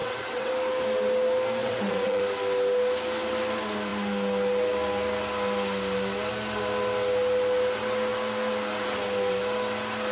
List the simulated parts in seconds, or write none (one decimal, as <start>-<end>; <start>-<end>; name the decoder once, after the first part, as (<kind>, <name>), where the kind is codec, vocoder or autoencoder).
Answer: 0.0-0.5 (vocoder, WaveNeXt); 1.6-2.2